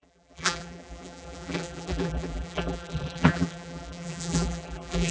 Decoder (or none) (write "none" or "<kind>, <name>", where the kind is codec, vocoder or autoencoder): vocoder, BigVGAN v2